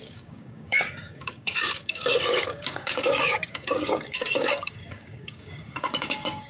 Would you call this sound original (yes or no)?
no